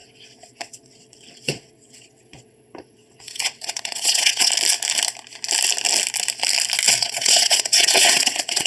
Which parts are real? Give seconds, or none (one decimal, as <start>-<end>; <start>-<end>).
4.5-7.0